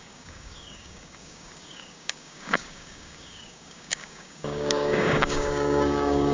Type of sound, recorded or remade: remade